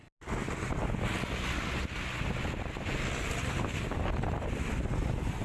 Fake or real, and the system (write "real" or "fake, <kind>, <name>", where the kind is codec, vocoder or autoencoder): real